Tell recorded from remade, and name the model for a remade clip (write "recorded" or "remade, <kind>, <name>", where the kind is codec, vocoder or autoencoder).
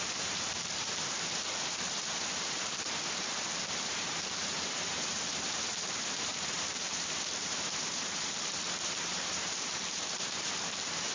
remade, vocoder, BigVGAN v2